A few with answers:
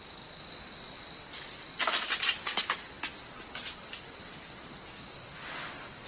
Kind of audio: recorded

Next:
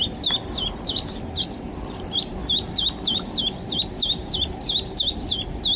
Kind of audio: recorded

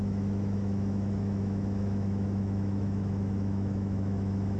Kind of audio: remade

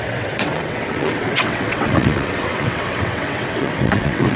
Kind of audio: remade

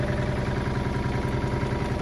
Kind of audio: recorded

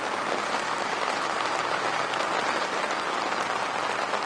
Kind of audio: recorded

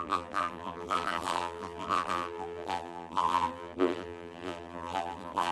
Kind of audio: remade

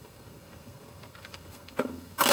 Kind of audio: remade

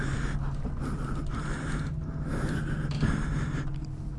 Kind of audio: recorded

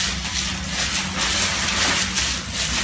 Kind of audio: recorded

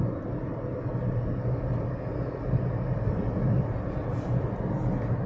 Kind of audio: recorded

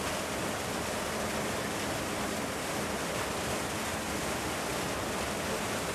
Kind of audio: recorded